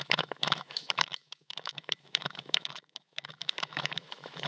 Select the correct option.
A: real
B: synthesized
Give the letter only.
B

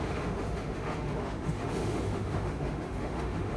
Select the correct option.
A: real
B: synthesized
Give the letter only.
B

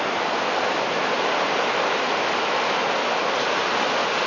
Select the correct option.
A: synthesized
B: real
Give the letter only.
B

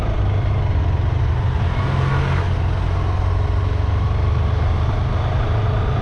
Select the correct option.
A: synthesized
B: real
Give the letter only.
B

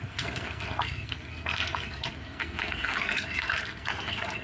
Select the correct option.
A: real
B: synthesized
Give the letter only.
B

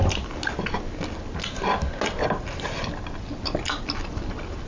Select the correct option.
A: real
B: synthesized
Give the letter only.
A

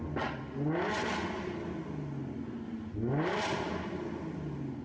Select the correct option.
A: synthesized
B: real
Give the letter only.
B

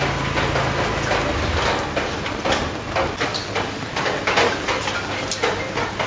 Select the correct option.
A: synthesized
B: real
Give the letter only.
B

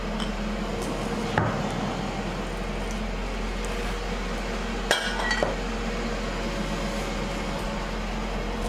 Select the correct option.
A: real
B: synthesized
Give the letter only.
A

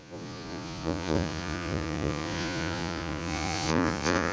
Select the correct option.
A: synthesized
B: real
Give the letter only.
A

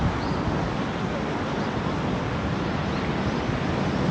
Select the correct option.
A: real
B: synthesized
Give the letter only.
A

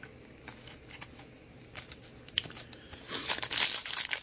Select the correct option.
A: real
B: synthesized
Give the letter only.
A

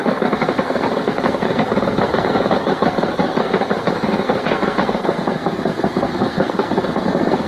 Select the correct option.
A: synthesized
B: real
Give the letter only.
A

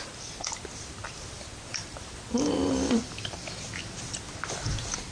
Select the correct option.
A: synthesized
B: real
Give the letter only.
A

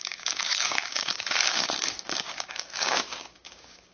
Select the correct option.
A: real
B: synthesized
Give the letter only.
B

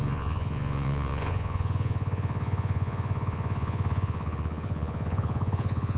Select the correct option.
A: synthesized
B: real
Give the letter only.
A